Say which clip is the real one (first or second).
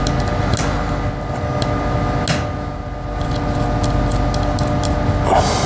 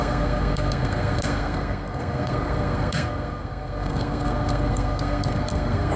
first